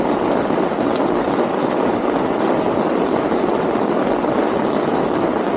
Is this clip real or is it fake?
real